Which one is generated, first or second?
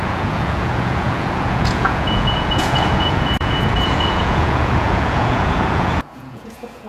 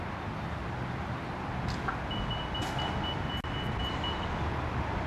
first